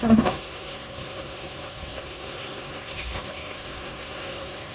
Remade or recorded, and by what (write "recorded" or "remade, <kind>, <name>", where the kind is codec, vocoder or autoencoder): remade, codec, SNAC